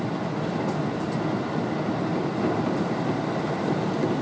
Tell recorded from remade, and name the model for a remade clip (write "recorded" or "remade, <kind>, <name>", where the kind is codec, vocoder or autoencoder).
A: recorded